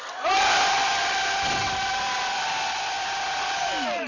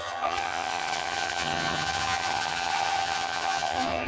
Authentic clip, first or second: first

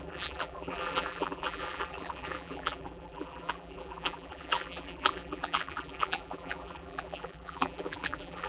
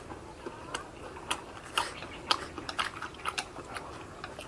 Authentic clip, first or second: second